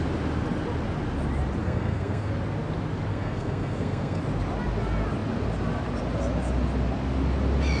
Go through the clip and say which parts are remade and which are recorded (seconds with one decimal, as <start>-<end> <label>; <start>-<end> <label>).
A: 0.0-1.6 recorded; 1.6-2.3 remade; 2.3-3.1 recorded; 3.1-4.2 remade; 4.2-7.8 recorded